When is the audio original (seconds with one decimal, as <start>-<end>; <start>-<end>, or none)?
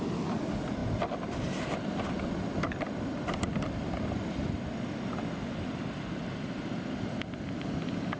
0.0-8.2